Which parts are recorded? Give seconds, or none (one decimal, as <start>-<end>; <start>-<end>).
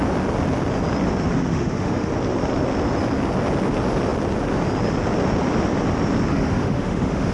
0.0-1.5; 2.1-6.3